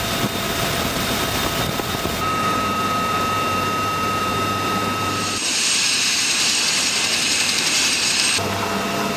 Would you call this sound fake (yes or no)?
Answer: yes